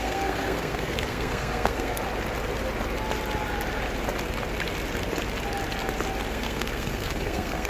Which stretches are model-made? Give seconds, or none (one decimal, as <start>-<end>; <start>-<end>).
0.0-2.0; 6.3-7.7